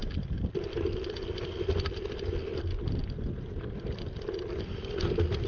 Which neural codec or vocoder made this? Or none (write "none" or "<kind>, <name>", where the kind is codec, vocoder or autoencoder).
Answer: none